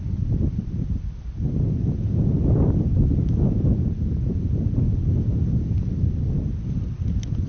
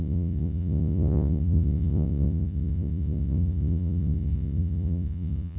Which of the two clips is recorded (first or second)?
first